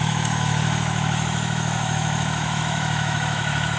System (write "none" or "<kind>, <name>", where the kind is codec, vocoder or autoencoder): autoencoder, DAC-VAE